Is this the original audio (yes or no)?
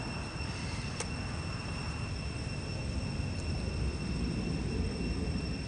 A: yes